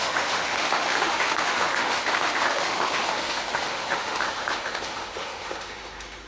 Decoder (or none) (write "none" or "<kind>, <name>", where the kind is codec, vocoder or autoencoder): autoencoder, DAC-VAE